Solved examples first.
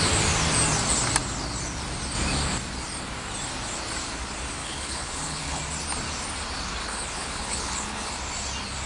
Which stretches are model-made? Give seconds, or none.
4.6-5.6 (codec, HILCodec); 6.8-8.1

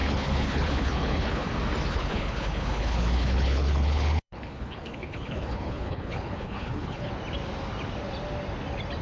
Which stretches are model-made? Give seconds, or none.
0.0-1.5 (codec, HILCodec); 1.9-7.1

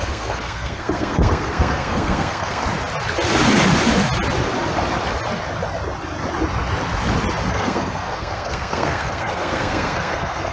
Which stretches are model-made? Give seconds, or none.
0.0-2.6 (codec, SNAC); 7.5-10.5

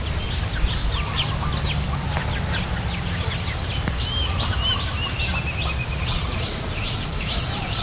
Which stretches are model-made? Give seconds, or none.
5.8-7.8 (vocoder, Vocos)

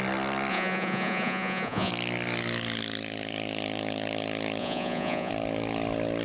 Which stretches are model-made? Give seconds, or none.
0.5-1.9 (vocoder, Vocos); 4.6-5.3